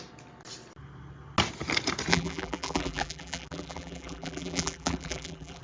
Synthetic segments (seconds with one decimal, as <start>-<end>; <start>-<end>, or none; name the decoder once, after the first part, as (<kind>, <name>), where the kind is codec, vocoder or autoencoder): 2.1-5.6 (vocoder, BigVGAN v2)